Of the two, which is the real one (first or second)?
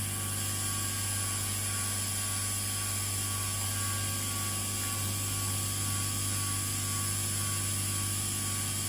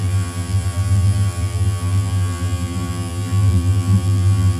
first